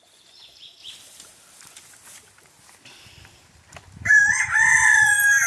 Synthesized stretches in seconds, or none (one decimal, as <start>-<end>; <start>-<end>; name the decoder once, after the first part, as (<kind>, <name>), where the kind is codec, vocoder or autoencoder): 0.0-0.8 (vocoder, Vocos); 4.1-5.5